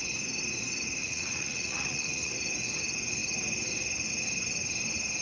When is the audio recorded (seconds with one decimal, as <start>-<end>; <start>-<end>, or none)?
0.0-1.0; 2.3-5.2

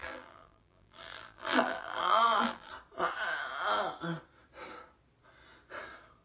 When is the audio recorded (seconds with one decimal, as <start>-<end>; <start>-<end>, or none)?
2.7-6.2

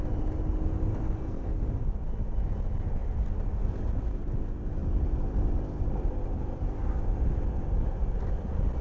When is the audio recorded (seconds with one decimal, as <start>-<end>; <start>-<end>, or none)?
0.0-0.9; 1.5-8.8